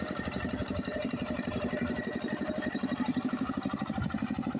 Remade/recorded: remade